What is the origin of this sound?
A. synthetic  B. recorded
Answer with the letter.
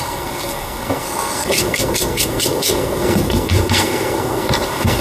A